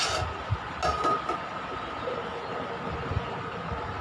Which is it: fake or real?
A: real